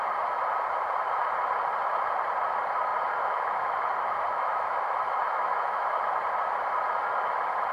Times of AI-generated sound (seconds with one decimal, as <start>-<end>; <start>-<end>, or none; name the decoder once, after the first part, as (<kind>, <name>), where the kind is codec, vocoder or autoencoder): 2.9-6.0 (autoencoder, DAC-VAE)